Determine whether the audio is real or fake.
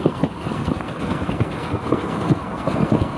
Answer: fake